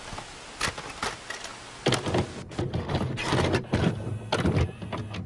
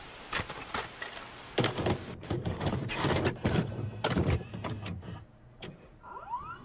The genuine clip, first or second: first